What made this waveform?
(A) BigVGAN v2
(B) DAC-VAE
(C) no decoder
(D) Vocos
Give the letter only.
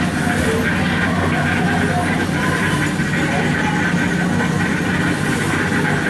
C